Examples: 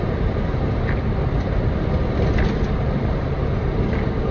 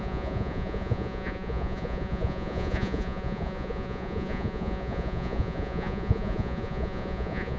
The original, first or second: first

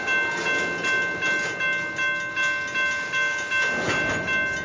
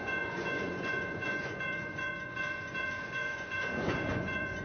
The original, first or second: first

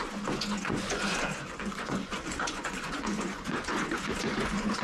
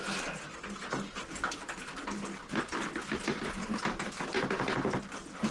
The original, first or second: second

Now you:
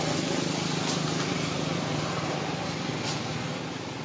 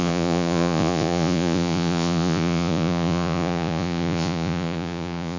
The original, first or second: first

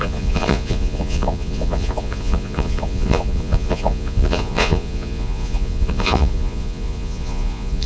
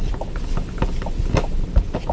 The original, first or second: second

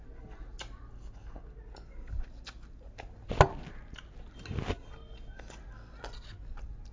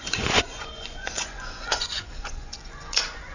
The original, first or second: first